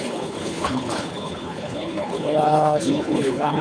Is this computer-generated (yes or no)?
yes